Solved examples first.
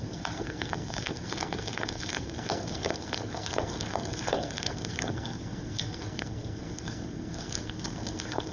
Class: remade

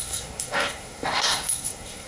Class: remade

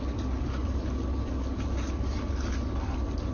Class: recorded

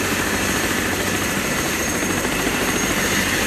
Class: remade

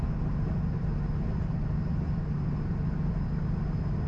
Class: recorded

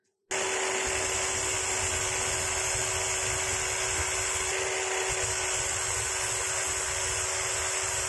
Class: recorded